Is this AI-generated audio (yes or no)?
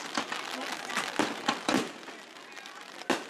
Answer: no